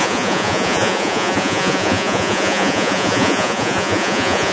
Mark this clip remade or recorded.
remade